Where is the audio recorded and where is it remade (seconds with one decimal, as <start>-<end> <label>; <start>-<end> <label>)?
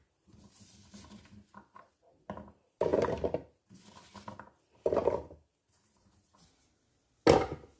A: 0.0-7.8 recorded